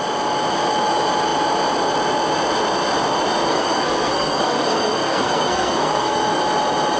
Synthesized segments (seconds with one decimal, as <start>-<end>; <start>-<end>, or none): 3.5-6.4